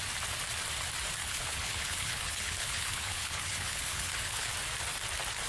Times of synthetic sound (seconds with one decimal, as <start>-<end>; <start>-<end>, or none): 1.2-4.5